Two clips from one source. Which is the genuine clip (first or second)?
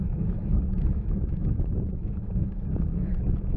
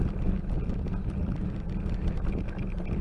second